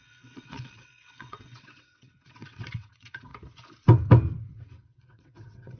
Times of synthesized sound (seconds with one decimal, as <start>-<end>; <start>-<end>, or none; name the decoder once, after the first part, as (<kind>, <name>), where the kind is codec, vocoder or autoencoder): 0.0-3.3 (vocoder, WaveNeXt); 4.4-5.8